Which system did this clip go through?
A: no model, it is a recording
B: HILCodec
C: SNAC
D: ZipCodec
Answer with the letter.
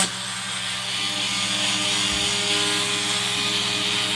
A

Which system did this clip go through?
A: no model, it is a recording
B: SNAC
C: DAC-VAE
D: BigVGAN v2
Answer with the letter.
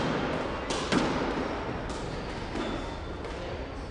A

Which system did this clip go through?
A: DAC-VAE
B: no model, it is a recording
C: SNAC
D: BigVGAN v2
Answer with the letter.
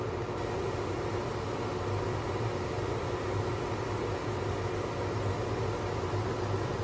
B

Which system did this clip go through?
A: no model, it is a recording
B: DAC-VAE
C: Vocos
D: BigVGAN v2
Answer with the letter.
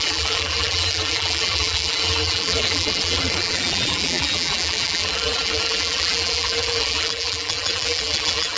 D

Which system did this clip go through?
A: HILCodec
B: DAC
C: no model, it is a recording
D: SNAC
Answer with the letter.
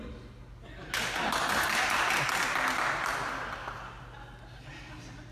C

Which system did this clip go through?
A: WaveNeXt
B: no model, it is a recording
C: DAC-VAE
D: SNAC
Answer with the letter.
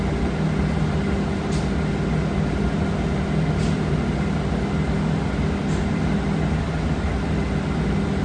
B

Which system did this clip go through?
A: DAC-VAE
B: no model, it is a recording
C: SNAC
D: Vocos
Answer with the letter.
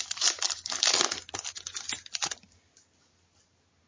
B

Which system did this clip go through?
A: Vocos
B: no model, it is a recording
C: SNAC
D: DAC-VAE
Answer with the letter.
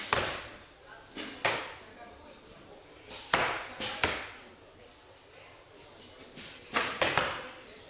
B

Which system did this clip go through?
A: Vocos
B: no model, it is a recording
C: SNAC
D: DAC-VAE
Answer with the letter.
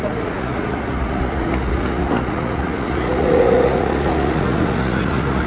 A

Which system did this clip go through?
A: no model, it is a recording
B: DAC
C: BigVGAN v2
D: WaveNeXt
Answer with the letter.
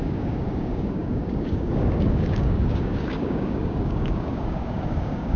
B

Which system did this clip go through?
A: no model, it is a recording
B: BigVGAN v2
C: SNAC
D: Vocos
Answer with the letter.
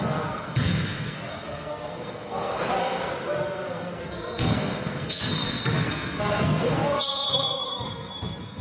C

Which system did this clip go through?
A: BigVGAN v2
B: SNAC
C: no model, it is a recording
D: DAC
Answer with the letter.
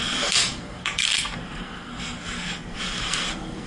B